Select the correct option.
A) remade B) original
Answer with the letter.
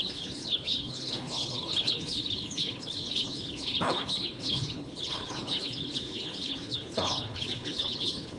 A